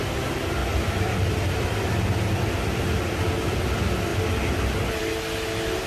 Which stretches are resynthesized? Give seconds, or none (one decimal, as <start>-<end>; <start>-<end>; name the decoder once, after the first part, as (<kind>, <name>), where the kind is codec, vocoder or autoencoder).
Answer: 0.6-1.5 (vocoder, BigVGAN v2)